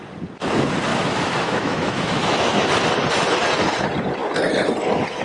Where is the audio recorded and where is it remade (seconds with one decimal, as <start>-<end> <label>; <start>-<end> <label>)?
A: 0.0-0.9 recorded; 0.9-2.7 remade; 2.7-5.2 recorded